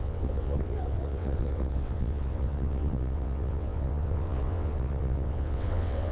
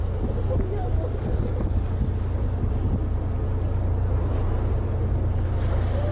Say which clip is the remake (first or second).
first